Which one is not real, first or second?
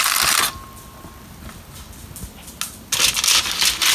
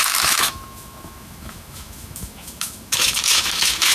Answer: second